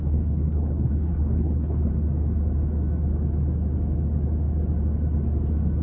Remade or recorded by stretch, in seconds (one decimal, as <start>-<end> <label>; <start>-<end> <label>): 0.0-1.9 remade; 1.9-5.8 recorded